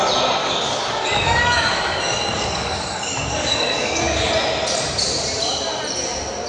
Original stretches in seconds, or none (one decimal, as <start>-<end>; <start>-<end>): 0.0-0.4; 4.3-6.5